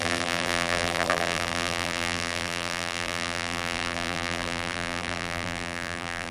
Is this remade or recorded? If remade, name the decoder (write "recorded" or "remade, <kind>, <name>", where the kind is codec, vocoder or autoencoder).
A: remade, vocoder, BigVGAN v2